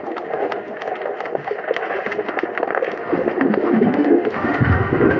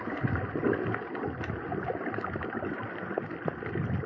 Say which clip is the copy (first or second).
first